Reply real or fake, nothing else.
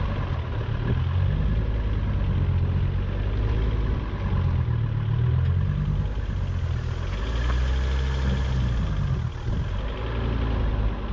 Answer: real